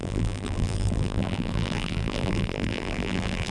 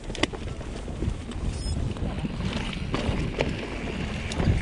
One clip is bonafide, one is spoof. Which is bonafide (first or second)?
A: second